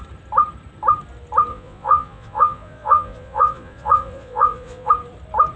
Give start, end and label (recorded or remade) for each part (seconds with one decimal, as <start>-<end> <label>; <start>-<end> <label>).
0.0-1.5 recorded; 1.5-4.9 remade; 4.9-5.6 recorded